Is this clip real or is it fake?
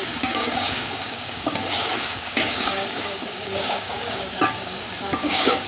fake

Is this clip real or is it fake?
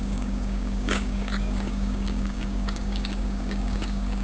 fake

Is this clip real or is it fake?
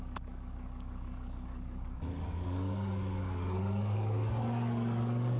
fake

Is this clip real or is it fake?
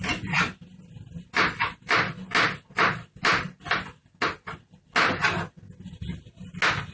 real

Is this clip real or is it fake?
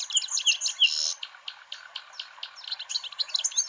real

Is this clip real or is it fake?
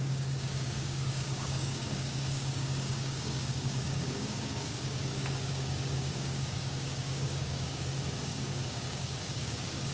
fake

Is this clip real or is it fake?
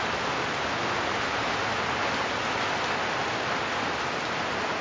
real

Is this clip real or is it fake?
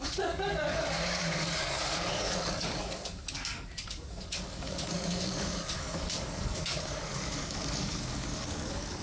fake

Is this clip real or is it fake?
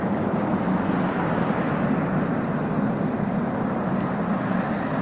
real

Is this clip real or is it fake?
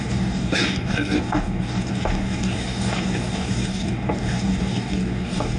fake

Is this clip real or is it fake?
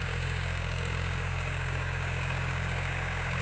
fake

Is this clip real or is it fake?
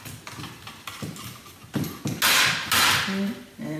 real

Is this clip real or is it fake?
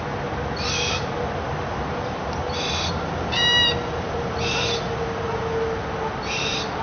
real